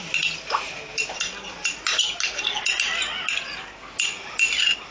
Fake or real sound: real